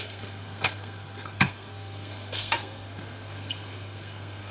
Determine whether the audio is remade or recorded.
remade